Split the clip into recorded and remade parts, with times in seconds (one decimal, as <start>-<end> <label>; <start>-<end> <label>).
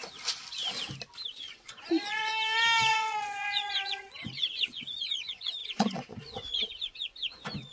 0.0-1.3 recorded; 1.3-2.3 remade; 2.3-2.9 recorded; 2.9-7.7 remade